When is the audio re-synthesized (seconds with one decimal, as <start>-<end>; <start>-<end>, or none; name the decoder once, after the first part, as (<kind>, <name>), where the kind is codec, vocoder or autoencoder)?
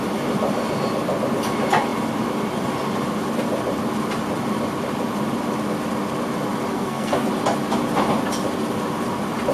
6.7-7.3 (codec, SNAC)